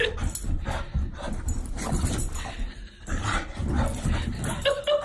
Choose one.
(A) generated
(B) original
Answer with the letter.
B